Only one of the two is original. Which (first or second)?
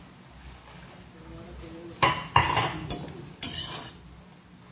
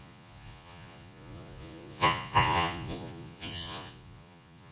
first